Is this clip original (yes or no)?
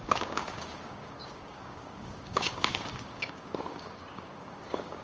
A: no